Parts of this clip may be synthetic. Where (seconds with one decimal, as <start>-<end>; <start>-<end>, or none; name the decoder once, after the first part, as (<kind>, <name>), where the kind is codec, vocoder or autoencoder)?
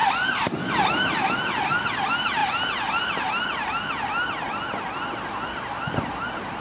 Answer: none